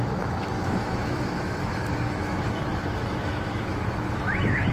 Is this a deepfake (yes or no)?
yes